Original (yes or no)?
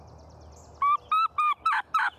yes